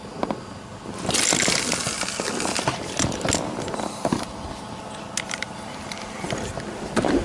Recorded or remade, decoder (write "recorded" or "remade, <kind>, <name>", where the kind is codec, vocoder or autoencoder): recorded